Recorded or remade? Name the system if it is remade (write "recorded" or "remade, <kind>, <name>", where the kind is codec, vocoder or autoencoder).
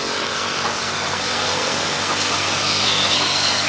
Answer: remade, codec, SNAC